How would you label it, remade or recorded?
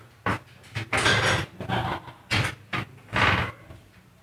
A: recorded